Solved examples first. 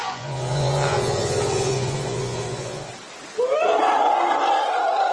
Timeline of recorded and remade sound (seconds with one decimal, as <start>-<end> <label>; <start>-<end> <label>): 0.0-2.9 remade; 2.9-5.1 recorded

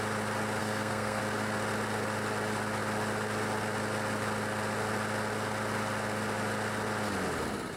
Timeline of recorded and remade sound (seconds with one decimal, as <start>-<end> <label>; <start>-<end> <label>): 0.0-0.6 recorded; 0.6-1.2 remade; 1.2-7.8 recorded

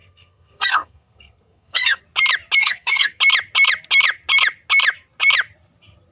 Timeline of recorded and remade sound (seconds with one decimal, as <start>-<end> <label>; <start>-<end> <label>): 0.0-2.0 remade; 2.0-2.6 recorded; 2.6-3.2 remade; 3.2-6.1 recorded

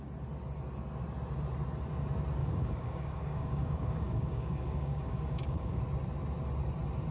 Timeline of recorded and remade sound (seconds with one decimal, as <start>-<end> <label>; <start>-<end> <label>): 0.0-2.4 recorded; 2.4-5.8 remade; 5.8-7.1 recorded

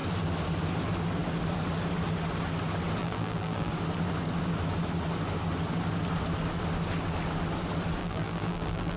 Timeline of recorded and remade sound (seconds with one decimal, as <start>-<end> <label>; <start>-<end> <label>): 0.0-3.0 recorded; 3.0-3.7 remade; 3.7-8.0 recorded; 8.0-9.0 remade

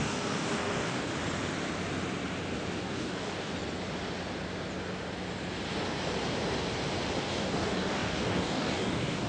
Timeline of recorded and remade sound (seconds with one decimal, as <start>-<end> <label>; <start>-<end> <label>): 0.0-1.1 remade; 1.1-2.8 recorded; 2.8-3.5 remade; 3.5-7.2 recorded; 7.2-9.3 remade